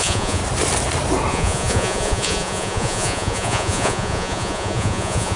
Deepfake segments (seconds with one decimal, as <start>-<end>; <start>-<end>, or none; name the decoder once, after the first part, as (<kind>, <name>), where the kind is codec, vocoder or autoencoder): 0.0-0.4 (vocoder, Vocos); 1.3-5.4

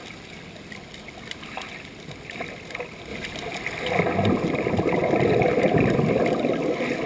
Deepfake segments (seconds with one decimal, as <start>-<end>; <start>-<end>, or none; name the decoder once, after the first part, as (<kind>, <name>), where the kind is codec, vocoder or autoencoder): none

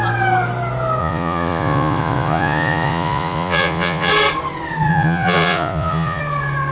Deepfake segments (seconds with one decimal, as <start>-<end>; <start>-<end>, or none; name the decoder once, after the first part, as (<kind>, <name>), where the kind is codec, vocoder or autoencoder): 1.0-4.1 (vocoder, Vocos); 4.9-6.2

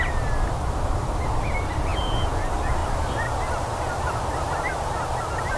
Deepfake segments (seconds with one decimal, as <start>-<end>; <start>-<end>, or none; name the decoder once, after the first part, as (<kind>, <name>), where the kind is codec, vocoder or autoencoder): 1.9-2.4 (vocoder, Vocos)

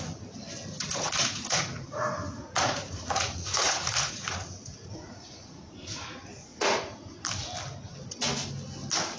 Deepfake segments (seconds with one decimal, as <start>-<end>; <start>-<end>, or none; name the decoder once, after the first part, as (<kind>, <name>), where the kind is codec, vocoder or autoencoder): 0.7-5.6 (vocoder, Vocos); 6.5-7.2

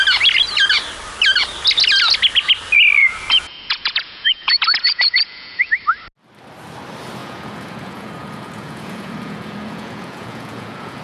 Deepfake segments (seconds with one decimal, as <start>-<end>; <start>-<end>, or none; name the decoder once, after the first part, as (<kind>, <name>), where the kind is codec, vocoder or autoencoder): 3.0-5.7 (vocoder, Vocos); 7.2-11.0

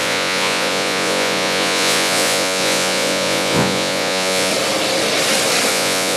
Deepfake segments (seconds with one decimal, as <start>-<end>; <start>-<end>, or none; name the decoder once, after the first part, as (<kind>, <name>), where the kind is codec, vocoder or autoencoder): 0.0-4.5 (vocoder, Vocos); 5.7-6.2

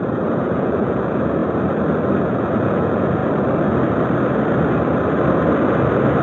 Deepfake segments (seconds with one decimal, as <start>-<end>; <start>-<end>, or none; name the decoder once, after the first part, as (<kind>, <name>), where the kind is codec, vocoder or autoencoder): 0.0-1.4 (vocoder, Vocos); 2.2-3.2